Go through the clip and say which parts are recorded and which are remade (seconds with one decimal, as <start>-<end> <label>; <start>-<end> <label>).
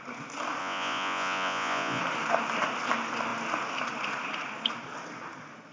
0.0-0.6 recorded; 0.6-2.0 remade; 2.0-5.7 recorded